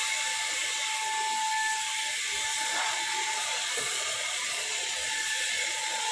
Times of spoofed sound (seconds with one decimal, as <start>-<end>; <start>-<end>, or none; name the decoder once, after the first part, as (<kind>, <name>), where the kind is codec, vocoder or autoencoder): 2.5-6.1 (vocoder, Vocos)